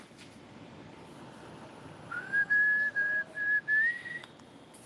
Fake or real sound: real